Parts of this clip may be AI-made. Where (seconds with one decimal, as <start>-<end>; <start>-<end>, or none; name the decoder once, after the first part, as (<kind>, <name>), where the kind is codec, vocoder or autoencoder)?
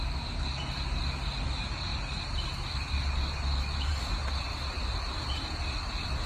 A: none